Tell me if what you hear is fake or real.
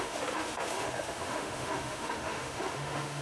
fake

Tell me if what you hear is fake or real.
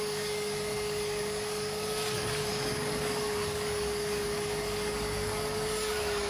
fake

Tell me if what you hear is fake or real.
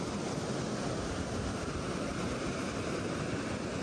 real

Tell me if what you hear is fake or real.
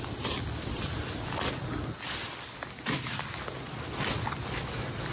real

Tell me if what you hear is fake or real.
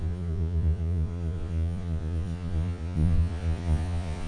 fake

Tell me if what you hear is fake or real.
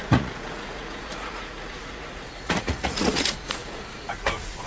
fake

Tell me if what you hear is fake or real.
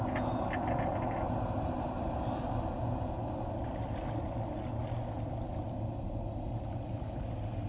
real